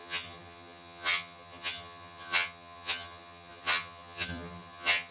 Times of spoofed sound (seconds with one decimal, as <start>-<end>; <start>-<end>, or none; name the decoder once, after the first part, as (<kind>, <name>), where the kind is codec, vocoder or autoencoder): 0.0-5.1 (vocoder, HiFi-GAN)